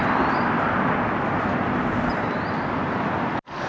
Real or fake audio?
real